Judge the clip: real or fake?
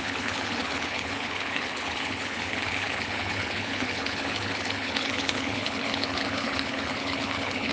fake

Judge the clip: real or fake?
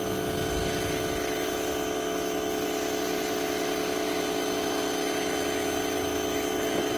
real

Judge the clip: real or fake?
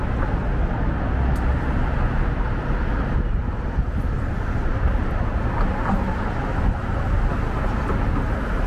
real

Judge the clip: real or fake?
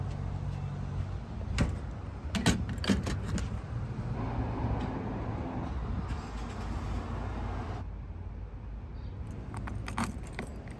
real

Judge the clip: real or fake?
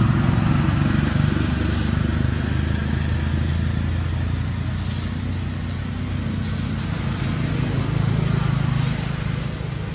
real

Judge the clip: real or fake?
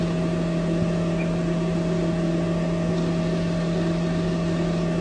real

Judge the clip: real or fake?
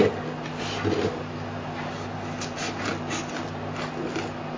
real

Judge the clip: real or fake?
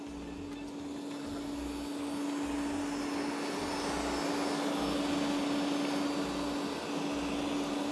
real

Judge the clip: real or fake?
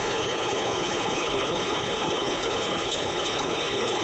fake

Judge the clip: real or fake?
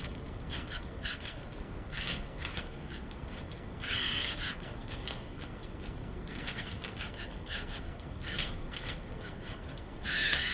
fake